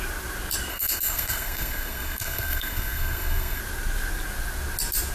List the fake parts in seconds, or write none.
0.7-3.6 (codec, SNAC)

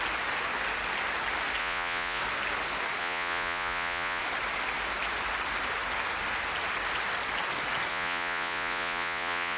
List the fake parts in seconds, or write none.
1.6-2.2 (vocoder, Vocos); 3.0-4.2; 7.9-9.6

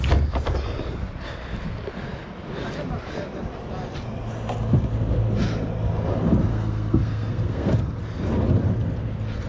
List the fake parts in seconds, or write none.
6.5-7.7 (codec, SNAC)

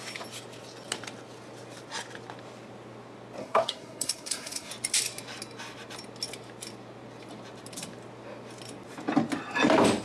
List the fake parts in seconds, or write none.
3.4-4.7 (codec, SNAC)